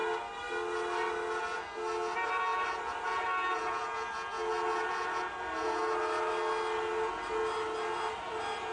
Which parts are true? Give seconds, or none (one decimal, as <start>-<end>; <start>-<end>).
0.0-8.7